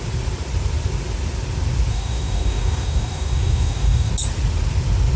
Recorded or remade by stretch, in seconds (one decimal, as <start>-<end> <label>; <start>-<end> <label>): 0.0-1.9 recorded; 1.9-4.1 remade; 4.1-5.2 recorded

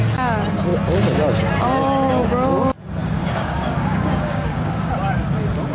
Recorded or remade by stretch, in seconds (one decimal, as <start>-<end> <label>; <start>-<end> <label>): 0.0-3.2 recorded; 3.2-4.9 remade; 4.9-5.7 recorded

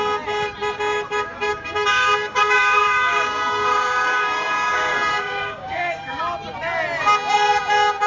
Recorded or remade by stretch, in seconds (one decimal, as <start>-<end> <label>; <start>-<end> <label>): 0.0-1.5 recorded; 1.5-6.2 remade; 6.2-8.1 recorded

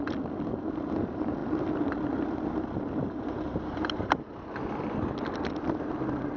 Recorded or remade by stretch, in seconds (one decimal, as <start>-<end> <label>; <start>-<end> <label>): 0.0-6.4 recorded

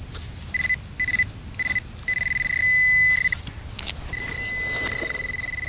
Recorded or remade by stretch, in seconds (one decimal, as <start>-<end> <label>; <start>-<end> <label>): 0.0-5.7 recorded